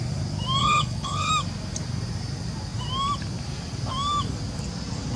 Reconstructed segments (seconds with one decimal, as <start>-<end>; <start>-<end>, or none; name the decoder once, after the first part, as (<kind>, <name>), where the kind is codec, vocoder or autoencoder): 0.6-1.3 (codec, HILCodec)